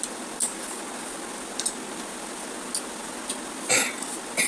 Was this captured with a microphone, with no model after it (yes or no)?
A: yes